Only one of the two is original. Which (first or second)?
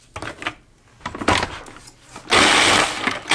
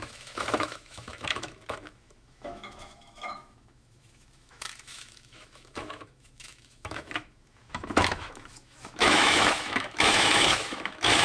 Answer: first